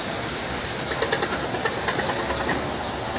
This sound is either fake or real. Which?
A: real